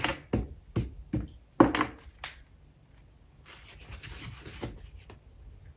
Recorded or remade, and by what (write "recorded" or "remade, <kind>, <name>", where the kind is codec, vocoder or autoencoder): recorded